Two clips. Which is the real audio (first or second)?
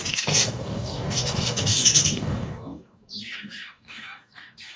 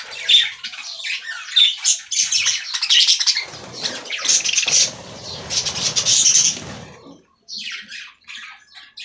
second